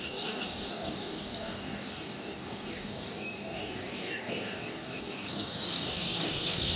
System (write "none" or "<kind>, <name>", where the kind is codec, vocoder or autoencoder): codec, DAC